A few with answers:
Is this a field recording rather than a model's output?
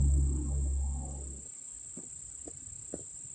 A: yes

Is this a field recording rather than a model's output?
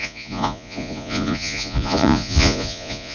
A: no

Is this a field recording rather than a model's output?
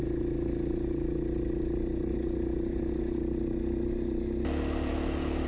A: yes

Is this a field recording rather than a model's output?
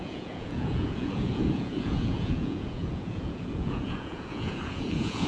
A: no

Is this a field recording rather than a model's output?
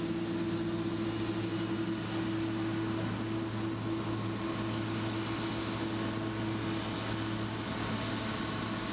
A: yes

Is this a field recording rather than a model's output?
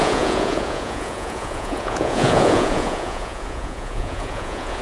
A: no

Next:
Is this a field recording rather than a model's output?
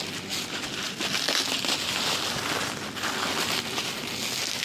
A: yes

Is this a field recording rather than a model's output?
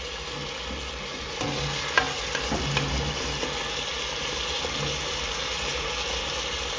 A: yes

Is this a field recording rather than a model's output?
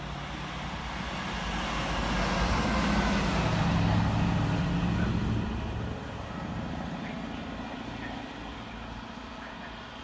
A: yes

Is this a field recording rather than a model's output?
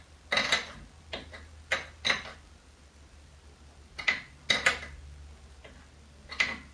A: yes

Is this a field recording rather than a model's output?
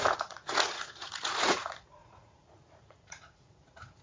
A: no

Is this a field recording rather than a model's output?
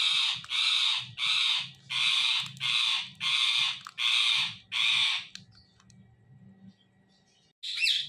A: yes